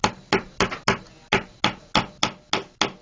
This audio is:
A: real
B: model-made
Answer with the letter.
A